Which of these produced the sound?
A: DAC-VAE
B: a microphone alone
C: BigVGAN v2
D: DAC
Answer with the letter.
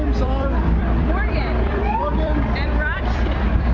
C